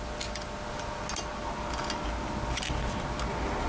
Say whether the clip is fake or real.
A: real